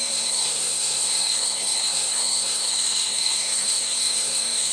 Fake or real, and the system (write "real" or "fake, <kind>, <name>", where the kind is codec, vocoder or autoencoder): fake, codec, SNAC